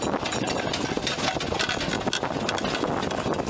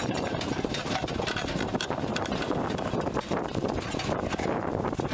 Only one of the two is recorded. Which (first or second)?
first